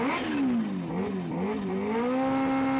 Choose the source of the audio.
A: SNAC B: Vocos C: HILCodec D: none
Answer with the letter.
D